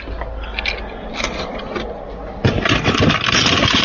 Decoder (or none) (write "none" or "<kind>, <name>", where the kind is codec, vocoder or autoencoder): none